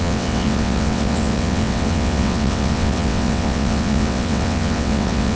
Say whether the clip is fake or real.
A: fake